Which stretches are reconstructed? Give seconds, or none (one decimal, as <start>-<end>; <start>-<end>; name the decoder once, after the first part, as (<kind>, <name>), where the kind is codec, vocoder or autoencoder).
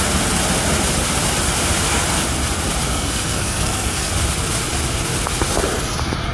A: 2.9-4.1 (codec, SNAC)